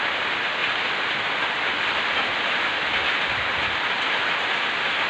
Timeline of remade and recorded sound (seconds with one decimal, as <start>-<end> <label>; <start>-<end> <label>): 0.0-5.1 recorded